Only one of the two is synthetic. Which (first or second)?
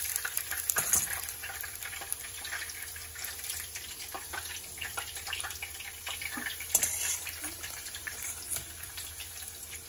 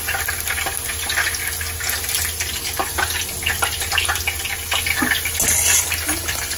first